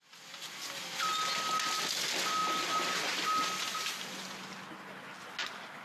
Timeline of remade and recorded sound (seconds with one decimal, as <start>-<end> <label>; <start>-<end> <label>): 0.0-5.8 recorded